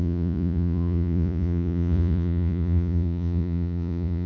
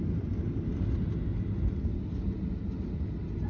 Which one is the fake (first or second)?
first